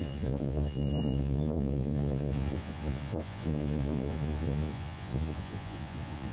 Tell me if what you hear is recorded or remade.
remade